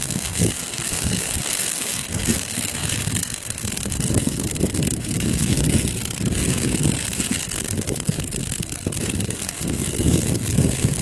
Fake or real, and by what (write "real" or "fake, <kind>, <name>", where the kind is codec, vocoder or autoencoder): fake, codec, SNAC